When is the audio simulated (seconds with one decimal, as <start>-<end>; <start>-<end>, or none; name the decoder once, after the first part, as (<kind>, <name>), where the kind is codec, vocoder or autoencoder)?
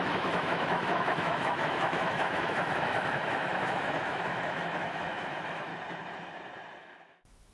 0.0-5.7 (autoencoder, DAC-VAE); 6.8-7.5